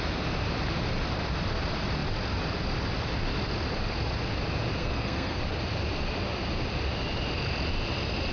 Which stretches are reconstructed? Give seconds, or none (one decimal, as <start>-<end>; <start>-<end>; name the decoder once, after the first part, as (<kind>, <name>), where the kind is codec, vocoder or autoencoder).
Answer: 4.8-5.4 (codec, SNAC)